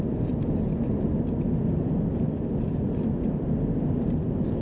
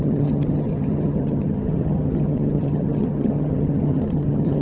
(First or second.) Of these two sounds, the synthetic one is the second